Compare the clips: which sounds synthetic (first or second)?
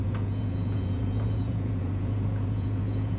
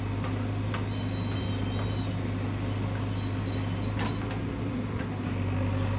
first